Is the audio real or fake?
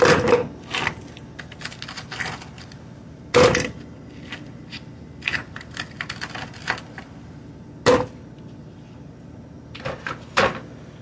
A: real